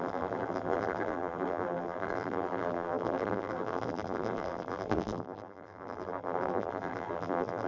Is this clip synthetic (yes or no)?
yes